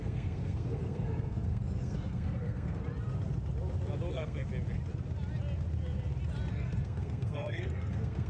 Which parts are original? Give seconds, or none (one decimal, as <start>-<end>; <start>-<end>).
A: 2.8-4.1; 4.5-6.5